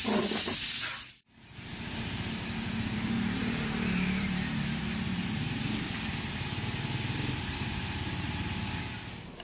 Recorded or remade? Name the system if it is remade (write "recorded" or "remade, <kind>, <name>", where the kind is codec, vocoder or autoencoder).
remade, vocoder, BigVGAN v2